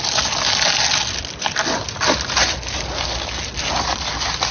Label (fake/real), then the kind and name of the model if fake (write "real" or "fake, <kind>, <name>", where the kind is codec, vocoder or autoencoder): real